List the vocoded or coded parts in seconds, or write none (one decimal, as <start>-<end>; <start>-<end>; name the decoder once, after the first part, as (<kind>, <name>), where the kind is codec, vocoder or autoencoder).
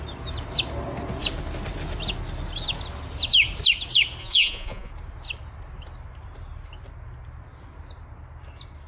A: 4.2-4.9 (vocoder, Vocos)